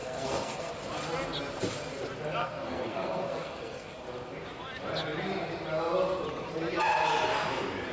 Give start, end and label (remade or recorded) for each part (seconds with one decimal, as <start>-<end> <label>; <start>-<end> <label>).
0.0-0.7 remade; 0.7-2.4 recorded; 2.4-3.9 remade; 3.9-7.9 recorded